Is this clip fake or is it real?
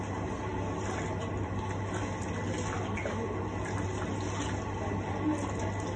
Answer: real